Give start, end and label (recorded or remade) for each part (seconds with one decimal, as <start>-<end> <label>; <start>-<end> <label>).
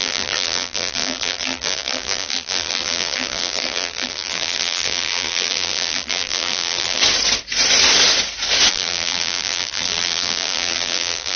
0.0-7.0 remade; 7.0-8.7 recorded; 8.7-11.4 remade